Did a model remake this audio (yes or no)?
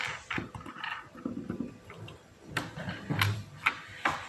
no